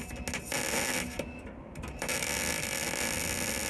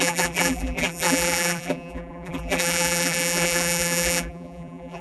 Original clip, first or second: first